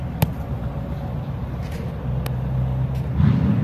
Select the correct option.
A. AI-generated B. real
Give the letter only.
B